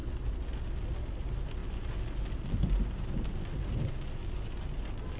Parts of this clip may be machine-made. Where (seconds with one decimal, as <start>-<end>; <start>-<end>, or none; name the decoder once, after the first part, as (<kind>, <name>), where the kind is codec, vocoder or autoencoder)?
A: none